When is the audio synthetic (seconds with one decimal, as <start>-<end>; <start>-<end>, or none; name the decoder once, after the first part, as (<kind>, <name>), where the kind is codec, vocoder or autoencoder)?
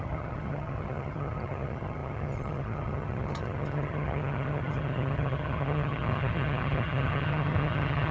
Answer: 0.0-8.1 (vocoder, HiFi-GAN)